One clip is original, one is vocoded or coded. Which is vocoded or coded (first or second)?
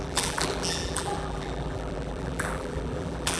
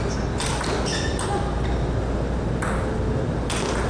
first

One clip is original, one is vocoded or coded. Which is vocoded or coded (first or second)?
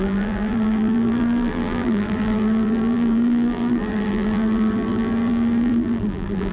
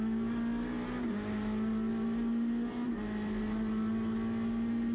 first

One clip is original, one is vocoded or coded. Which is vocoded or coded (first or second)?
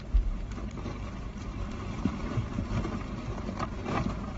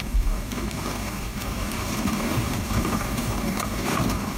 second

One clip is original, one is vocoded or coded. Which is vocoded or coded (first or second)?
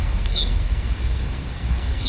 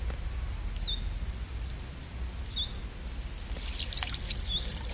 first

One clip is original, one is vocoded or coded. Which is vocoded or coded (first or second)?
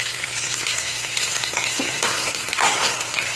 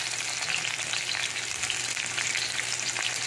first